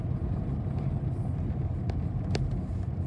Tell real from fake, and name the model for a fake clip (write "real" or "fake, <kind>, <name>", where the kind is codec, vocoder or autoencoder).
real